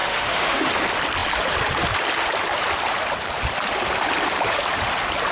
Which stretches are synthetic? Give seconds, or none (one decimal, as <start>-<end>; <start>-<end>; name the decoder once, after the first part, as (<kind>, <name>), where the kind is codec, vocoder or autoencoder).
0.0-0.7 (autoencoder, DAC-VAE)